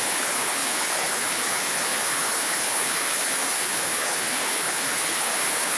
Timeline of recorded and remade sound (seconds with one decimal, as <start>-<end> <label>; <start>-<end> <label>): 0.0-5.8 remade